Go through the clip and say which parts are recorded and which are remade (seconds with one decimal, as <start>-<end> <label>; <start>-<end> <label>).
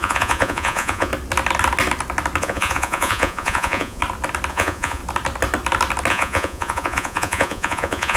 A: 0.0-1.1 remade; 1.1-2.4 recorded; 2.4-4.0 remade; 4.0-4.5 recorded; 4.5-5.0 remade; 5.0-6.1 recorded; 6.1-8.2 remade